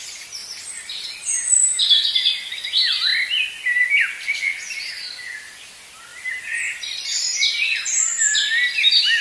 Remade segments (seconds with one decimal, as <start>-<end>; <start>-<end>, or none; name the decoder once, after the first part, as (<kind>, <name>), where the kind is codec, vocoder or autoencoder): 0.4-1.8 (vocoder, BigVGAN v2); 6.1-6.6; 7.9-8.5

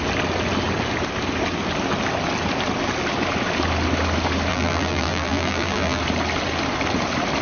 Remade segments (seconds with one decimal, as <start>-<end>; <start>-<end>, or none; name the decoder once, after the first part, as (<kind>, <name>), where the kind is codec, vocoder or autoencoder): 4.5-6.0 (vocoder, BigVGAN v2)

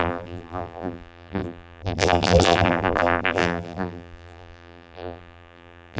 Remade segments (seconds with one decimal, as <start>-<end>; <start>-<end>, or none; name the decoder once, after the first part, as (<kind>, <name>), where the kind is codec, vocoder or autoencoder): 0.0-6.0 (vocoder, BigVGAN v2)

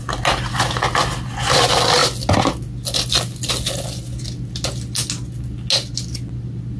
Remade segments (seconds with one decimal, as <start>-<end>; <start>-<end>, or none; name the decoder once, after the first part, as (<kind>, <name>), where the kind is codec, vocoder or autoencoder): none

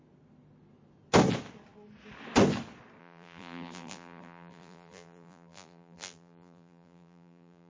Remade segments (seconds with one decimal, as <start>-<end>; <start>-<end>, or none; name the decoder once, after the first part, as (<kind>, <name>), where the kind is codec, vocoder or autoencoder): 3.0-7.7 (vocoder, BigVGAN v2)

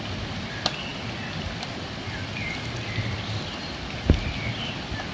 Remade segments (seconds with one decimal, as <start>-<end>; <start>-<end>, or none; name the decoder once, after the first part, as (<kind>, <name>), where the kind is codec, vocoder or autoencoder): none

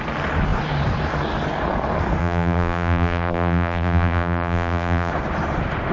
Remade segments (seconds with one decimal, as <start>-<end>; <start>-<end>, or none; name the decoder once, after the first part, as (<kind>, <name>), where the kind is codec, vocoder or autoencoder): 2.2-5.1 (vocoder, BigVGAN v2)